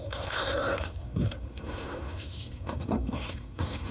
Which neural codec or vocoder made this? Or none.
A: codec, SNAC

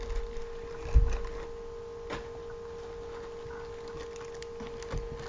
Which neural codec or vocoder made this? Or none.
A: none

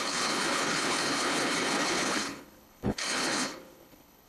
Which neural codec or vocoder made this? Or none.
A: codec, HILCodec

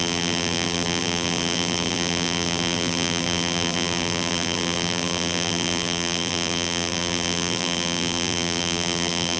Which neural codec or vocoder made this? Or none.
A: vocoder, BigVGAN v2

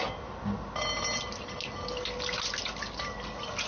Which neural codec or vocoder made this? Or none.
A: none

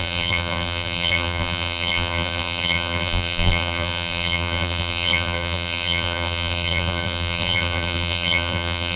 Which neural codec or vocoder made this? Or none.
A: vocoder, BigVGAN v2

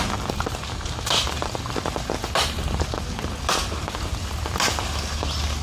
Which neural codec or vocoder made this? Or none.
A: none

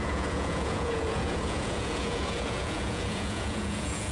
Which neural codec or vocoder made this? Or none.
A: vocoder, Vocos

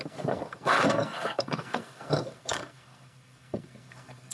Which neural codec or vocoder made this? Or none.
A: codec, SNAC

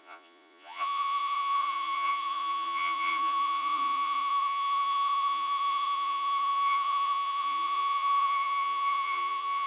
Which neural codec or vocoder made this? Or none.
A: vocoder, Vocos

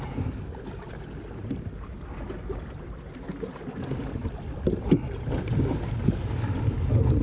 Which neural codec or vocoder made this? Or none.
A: none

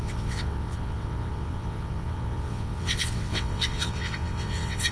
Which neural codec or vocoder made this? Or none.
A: vocoder, WaveNeXt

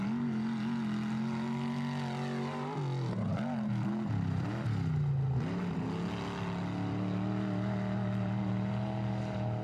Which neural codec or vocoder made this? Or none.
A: none